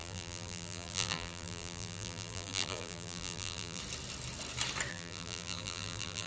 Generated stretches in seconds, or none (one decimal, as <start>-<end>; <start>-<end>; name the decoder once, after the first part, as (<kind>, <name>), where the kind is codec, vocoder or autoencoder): 0.0-3.8 (vocoder, BigVGAN v2); 4.9-6.3